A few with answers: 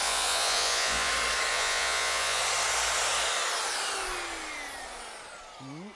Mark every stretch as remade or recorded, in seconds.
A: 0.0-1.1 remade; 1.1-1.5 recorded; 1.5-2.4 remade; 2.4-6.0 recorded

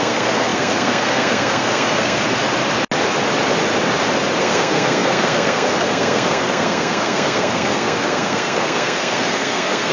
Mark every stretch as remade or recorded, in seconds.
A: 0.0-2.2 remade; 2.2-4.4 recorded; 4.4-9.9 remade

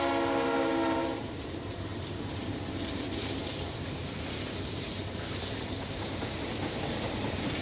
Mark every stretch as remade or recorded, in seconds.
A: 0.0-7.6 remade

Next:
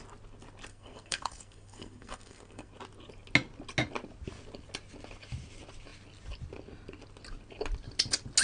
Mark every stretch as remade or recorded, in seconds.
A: 0.0-0.7 recorded; 0.7-2.7 remade; 2.7-8.4 recorded